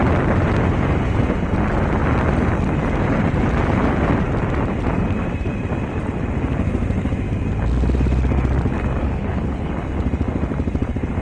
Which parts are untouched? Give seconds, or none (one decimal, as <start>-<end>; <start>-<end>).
0.0-9.0; 9.7-11.2